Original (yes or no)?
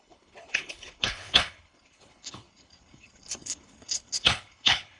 no